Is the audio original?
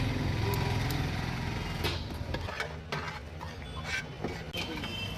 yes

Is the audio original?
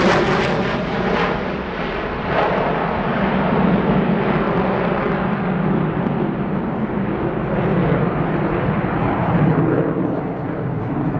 yes